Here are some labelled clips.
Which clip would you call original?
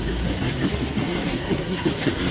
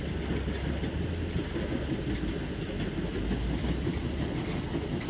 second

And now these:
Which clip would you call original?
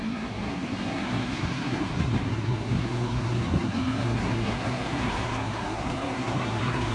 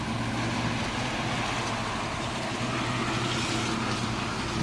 second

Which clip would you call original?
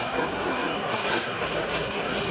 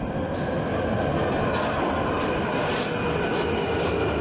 second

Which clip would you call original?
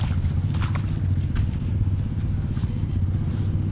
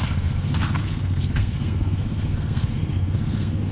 first